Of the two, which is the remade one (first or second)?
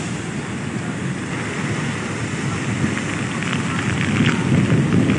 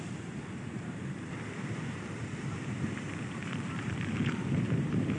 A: second